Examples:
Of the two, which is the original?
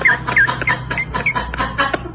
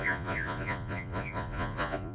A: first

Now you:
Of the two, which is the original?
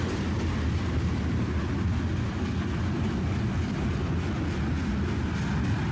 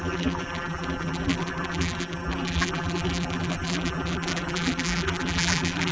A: first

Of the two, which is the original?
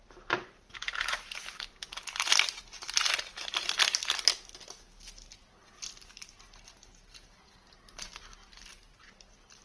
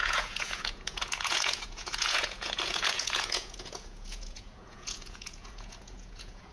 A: first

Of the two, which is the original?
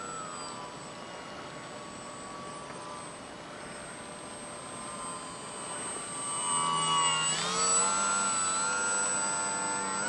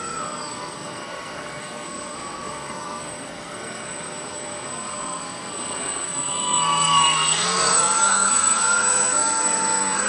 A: first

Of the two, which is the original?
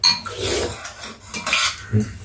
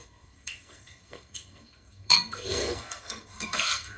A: first